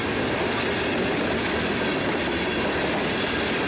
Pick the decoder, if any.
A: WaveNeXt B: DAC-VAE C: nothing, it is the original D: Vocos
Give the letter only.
C